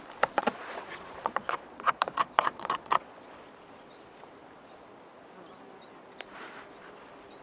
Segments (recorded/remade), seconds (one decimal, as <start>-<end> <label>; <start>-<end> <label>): 0.0-0.4 recorded; 0.4-3.4 remade; 3.4-7.4 recorded